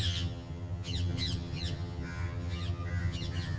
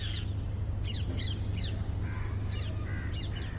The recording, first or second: second